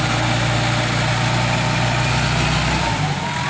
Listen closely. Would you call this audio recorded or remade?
recorded